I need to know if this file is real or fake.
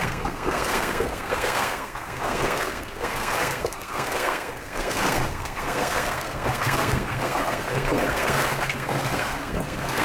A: fake